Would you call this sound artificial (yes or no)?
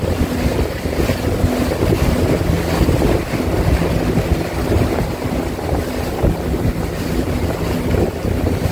no